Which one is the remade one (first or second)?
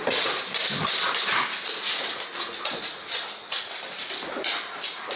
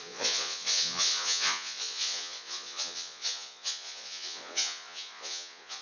second